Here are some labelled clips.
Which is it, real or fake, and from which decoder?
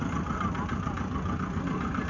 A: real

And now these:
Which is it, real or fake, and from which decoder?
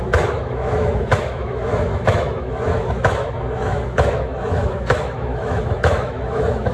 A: fake, autoencoder, DAC-VAE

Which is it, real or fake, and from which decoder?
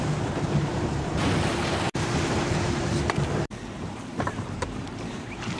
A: fake, vocoder, BigVGAN v2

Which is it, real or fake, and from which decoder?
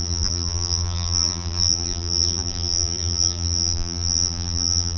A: fake, vocoder, BigVGAN v2